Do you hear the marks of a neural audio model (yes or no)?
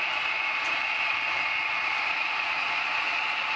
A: yes